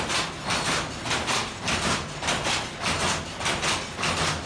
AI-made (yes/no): no